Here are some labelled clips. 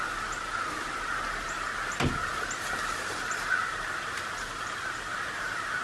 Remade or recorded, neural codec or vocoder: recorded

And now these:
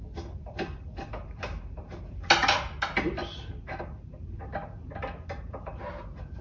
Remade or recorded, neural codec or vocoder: recorded